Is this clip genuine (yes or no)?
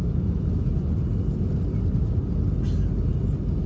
yes